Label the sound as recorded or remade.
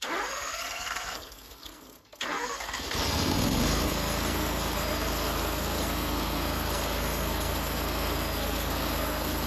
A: remade